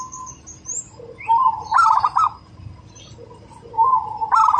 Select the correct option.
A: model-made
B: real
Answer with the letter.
B